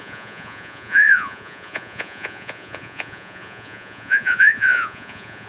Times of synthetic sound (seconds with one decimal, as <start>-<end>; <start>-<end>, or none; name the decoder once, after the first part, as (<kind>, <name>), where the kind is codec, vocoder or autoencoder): 0.0-5.5 (vocoder, Vocos)